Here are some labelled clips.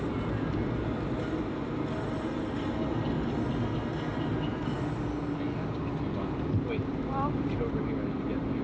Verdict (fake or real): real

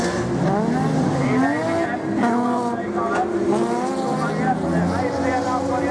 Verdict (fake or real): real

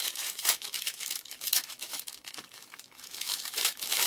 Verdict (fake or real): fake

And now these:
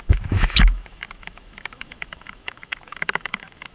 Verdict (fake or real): fake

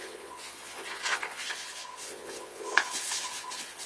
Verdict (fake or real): fake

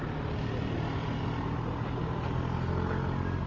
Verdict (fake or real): real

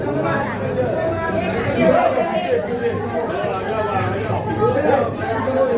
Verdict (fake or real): real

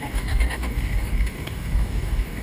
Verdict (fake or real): fake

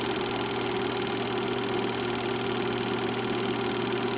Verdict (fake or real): real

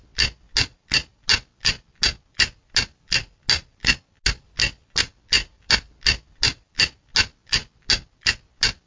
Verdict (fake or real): real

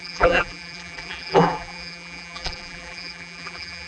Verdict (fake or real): fake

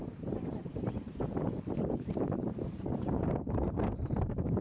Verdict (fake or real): fake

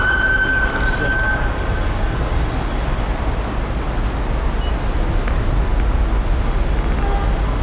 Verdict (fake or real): real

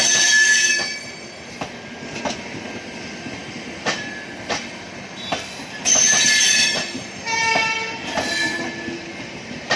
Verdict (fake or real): fake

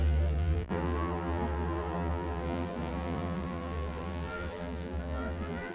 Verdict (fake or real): fake